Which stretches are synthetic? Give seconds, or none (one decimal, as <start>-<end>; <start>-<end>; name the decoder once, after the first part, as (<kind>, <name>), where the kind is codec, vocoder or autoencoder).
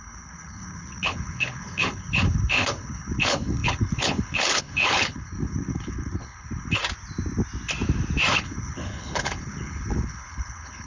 0.0-6.8 (codec, HILCodec); 8.3-10.9